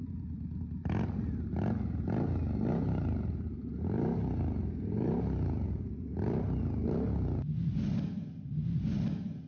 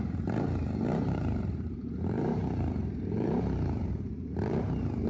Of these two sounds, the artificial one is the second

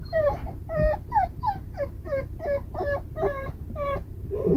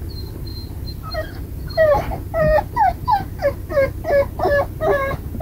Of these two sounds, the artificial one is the first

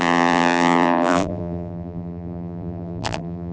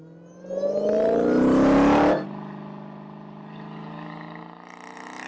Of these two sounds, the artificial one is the first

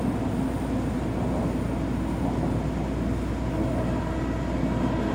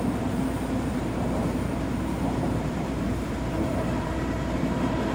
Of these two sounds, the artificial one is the second